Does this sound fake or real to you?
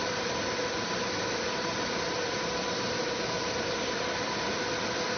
real